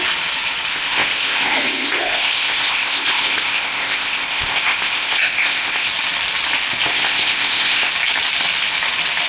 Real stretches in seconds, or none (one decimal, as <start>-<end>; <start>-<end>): 0.0-0.7; 5.9-6.9; 7.9-9.3